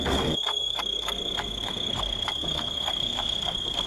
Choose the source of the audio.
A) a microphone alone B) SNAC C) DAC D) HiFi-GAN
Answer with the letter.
B